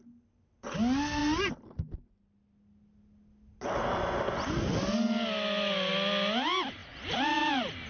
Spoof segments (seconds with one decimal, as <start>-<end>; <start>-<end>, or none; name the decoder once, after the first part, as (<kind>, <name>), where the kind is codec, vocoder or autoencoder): none